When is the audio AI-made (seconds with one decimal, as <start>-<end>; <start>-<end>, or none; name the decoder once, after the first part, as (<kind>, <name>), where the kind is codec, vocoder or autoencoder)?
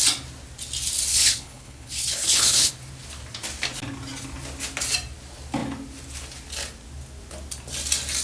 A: 1.1-2.7 (codec, HILCodec)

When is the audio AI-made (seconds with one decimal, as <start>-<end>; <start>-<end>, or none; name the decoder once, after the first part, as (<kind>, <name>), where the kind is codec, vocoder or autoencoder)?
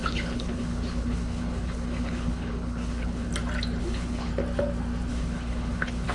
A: 0.0-3.3 (codec, HILCodec); 3.8-4.3; 5.1-6.1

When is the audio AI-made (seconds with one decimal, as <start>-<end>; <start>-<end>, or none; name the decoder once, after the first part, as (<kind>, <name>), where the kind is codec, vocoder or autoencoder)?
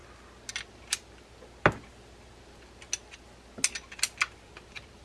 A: none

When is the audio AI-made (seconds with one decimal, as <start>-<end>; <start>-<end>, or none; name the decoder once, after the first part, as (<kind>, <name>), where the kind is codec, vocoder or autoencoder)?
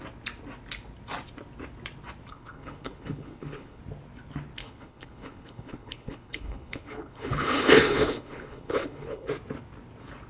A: 2.3-3.8 (codec, HILCodec); 4.6-9.3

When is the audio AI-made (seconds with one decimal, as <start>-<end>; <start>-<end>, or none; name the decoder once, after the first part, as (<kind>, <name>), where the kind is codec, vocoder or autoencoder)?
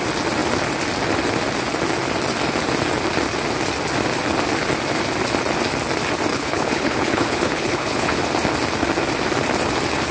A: 6.3-8.2 (codec, HILCodec)